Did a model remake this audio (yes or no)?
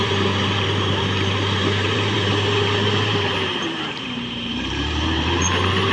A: yes